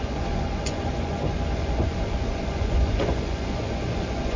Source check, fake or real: fake